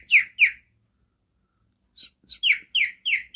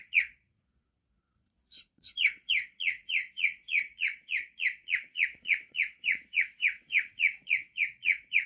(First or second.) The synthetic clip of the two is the second